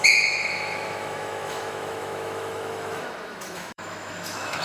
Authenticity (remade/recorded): remade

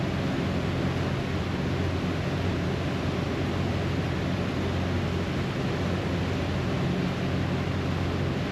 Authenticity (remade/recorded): recorded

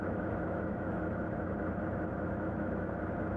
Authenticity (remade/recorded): remade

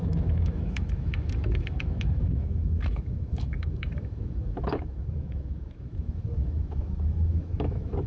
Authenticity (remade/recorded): remade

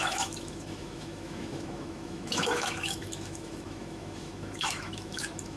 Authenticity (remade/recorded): remade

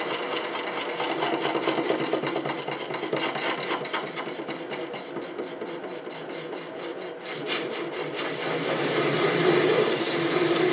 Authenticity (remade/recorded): recorded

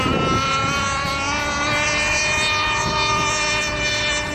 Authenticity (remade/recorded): recorded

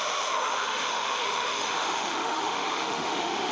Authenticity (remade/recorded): remade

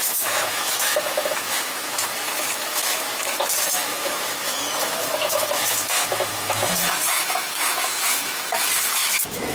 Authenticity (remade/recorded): remade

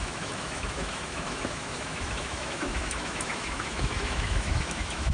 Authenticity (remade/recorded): remade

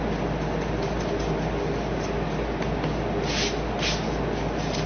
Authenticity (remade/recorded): recorded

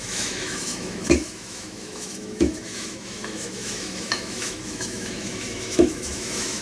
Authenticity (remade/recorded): remade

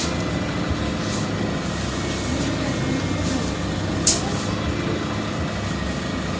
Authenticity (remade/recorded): recorded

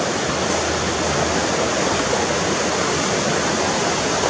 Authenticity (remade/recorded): recorded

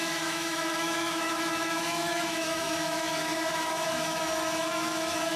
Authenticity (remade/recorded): remade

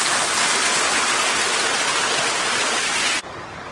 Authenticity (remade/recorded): recorded